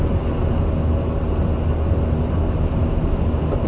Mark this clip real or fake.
real